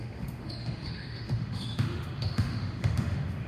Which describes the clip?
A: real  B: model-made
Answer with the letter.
B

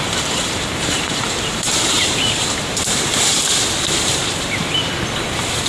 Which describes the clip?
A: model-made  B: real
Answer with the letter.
A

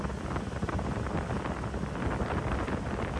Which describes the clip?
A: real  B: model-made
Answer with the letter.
A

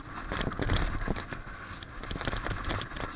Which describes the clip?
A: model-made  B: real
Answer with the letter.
B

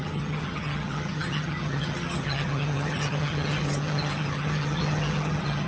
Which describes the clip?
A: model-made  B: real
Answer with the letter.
A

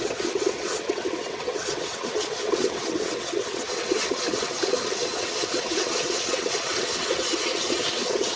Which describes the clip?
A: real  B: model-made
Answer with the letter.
B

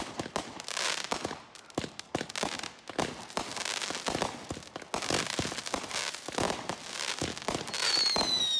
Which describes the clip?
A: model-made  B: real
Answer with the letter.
B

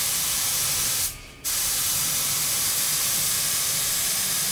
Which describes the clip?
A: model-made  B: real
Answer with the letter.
B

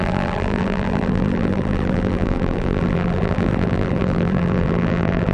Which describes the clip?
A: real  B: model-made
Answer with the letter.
B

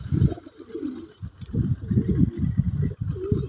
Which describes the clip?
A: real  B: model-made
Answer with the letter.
A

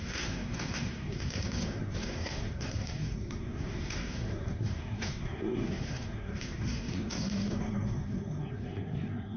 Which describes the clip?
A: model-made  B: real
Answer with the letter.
A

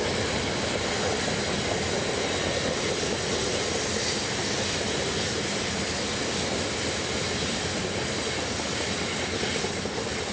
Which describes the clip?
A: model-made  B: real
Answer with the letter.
B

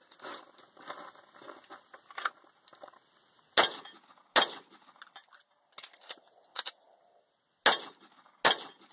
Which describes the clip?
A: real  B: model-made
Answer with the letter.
A